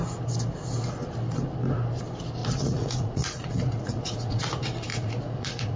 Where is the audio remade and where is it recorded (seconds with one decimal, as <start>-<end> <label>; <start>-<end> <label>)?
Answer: 0.0-2.4 recorded; 2.4-4.4 remade; 4.4-4.9 recorded; 4.9-5.8 remade